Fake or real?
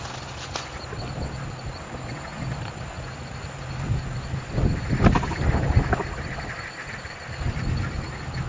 real